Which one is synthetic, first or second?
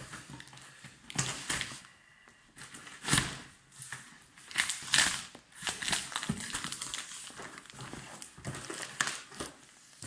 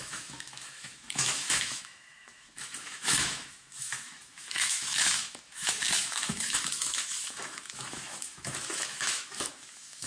second